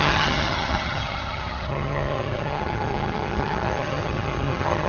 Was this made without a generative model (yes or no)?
no